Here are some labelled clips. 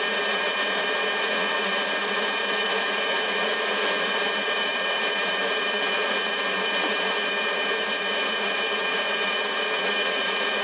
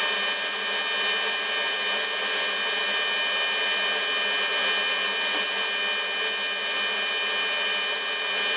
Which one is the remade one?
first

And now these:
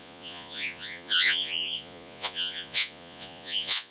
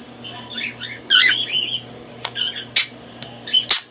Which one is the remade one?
first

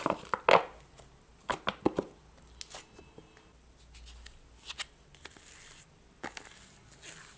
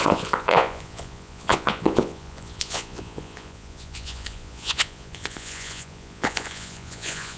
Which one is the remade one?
second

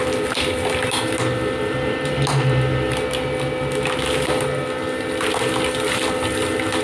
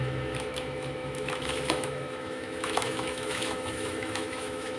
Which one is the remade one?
second